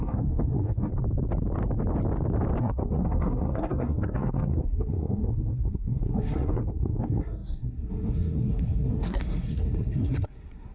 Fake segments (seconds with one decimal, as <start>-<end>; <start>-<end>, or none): 0.0-0.9; 2.6-10.7